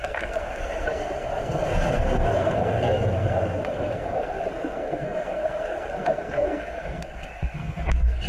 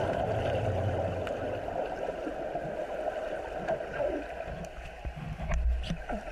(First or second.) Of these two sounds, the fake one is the first